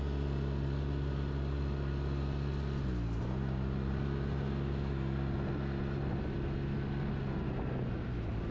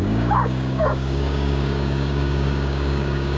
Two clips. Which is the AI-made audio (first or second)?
second